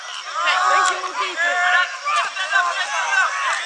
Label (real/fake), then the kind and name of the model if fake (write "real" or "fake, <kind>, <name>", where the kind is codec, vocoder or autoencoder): real